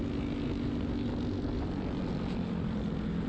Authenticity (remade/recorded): recorded